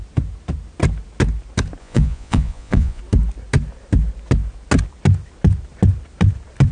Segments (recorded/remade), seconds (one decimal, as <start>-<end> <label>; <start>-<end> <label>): 0.0-1.8 recorded; 1.8-3.0 remade; 3.0-6.7 recorded